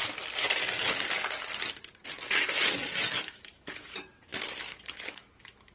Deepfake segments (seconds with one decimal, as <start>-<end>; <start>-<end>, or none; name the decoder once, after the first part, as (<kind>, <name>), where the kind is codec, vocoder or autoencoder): 3.1-4.3 (autoencoder, DAC-VAE); 4.9-5.7